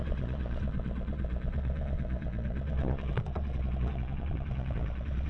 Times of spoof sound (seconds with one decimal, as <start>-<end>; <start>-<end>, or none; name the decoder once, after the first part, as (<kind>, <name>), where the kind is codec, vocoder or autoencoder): 0.0-5.3 (vocoder, Vocos)